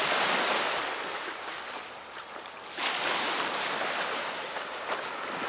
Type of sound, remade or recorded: recorded